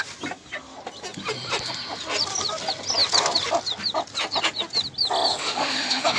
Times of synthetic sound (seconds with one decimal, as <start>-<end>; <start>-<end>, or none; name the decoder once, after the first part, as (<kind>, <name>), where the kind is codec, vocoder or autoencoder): 5.3-6.2 (autoencoder, DAC-VAE)